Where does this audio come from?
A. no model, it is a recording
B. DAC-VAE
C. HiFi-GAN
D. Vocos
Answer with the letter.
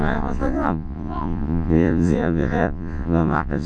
D